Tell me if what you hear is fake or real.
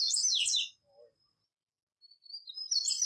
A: real